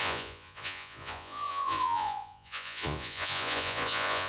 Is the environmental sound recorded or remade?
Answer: remade